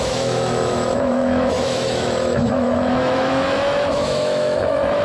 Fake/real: fake